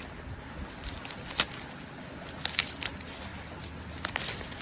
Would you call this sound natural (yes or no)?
yes